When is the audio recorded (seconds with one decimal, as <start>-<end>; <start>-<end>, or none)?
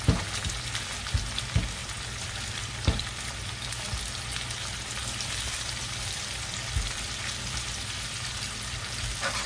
0.0-1.8; 3.7-5.0; 8.9-9.5